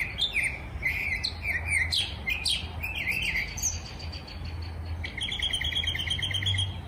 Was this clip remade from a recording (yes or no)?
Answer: no